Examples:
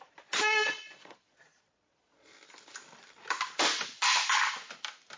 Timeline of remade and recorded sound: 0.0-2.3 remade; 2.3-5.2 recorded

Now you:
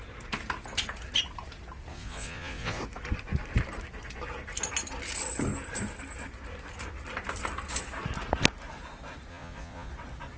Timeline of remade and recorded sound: 0.0-1.9 recorded; 1.9-2.8 remade; 2.8-9.3 recorded; 9.3-9.9 remade; 9.9-10.4 recorded

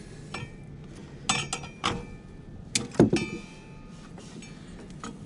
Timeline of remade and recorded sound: 0.0-5.3 recorded

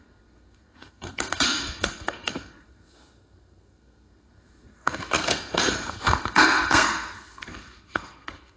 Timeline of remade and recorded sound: 0.0-8.6 remade

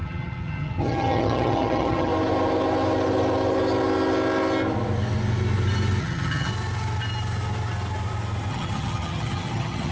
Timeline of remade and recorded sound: 0.0-2.1 remade; 2.1-6.0 recorded; 6.0-6.5 remade; 6.5-8.5 recorded; 8.5-9.9 remade

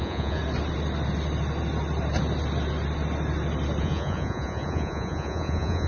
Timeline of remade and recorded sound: 0.0-0.4 remade; 0.4-3.8 recorded; 3.8-5.9 remade